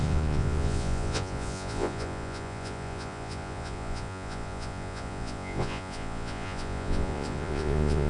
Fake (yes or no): yes